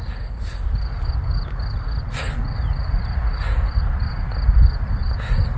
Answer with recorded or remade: recorded